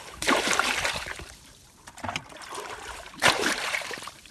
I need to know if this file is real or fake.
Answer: fake